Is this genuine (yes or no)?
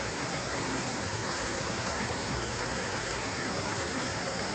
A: no